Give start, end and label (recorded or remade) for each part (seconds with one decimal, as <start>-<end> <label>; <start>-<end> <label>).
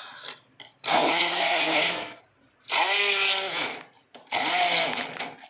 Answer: 0.0-0.9 recorded; 0.9-2.2 remade; 2.2-5.5 recorded